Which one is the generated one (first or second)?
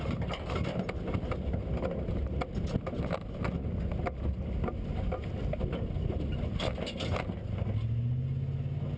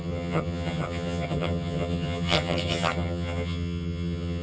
second